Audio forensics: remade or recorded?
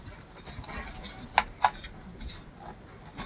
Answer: recorded